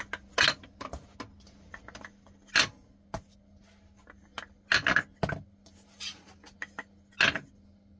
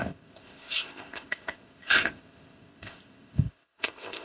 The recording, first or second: first